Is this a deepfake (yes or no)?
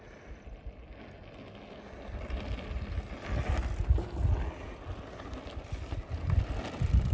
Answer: no